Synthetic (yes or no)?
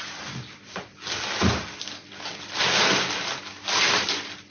no